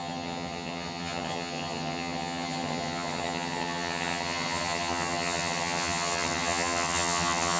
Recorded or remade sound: remade